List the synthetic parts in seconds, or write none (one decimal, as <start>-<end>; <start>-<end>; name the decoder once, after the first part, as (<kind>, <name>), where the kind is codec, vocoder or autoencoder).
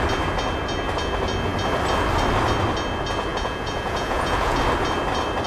3.3-4.6 (vocoder, Vocos)